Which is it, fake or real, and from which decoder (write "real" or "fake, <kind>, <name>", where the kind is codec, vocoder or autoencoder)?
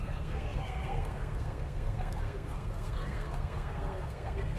fake, codec, SNAC